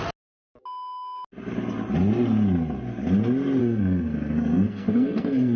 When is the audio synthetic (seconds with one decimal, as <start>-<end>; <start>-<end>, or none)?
3.6-5.6